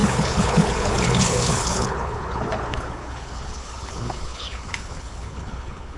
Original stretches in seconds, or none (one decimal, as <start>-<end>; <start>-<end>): none